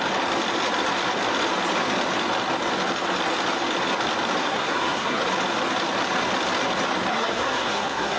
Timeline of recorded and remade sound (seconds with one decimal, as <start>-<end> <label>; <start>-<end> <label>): 0.0-4.4 recorded; 4.4-5.2 remade; 5.2-7.1 recorded; 7.1-8.2 remade